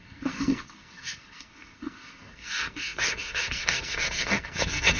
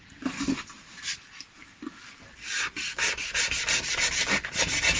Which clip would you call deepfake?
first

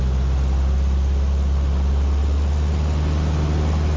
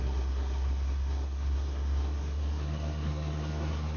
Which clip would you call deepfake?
second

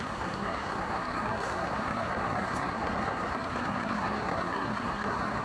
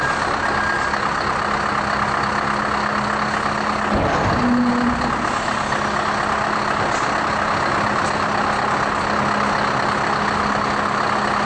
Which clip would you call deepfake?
first